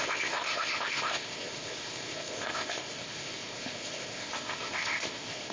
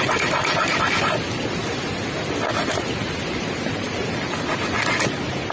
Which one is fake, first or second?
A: first